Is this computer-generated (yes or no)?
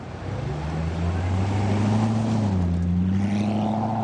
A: no